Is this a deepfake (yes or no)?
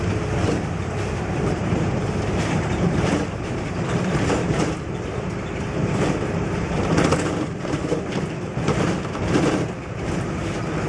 yes